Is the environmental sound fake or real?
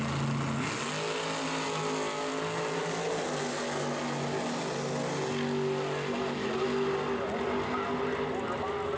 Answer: real